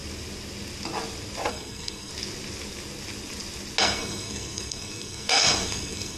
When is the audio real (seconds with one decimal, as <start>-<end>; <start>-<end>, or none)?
0.0-1.5; 2.1-3.8